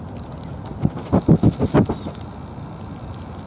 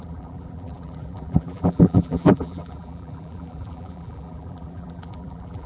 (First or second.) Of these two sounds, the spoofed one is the second